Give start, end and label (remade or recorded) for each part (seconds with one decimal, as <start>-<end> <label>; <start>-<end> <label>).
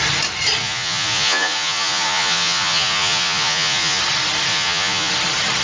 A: 0.0-0.6 recorded; 0.6-4.0 remade; 4.0-4.5 recorded; 4.5-5.1 remade; 5.1-5.6 recorded